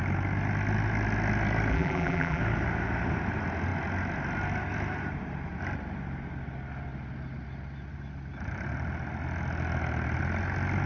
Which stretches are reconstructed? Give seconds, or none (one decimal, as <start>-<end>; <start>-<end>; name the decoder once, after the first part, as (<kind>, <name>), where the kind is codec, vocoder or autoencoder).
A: 1.7-2.4 (vocoder, BigVGAN v2)